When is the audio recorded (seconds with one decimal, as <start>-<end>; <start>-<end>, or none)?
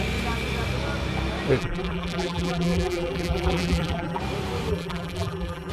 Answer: 0.0-1.6; 4.2-4.7